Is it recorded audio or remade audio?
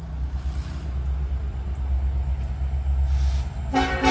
recorded